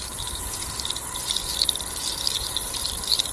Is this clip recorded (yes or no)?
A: yes